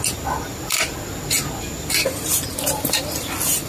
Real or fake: real